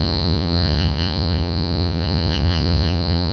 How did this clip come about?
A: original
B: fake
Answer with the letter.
B